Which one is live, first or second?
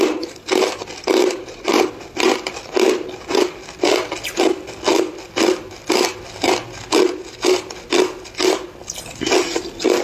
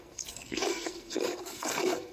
first